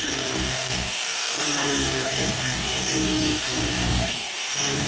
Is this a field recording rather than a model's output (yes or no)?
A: no